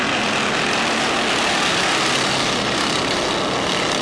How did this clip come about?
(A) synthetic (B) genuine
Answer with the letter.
B